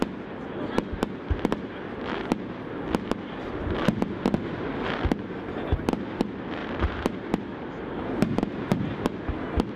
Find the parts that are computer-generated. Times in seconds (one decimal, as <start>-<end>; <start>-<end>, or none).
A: 6.6-7.3